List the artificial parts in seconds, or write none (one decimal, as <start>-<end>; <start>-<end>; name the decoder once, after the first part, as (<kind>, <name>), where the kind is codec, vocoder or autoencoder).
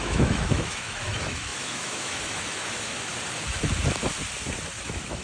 0.0-3.1 (autoencoder, DAC-VAE); 4.7-5.2